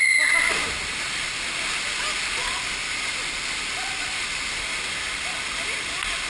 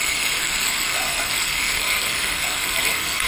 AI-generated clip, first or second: second